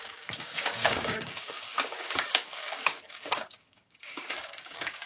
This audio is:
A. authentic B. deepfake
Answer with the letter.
B